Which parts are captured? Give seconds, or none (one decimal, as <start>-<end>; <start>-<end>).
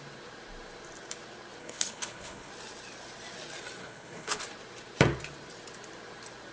0.0-1.6; 2.5-3.8; 4.4-6.5